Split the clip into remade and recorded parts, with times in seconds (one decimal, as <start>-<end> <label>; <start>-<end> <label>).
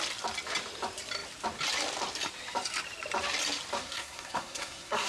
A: 0.0-3.8 recorded; 3.8-5.1 remade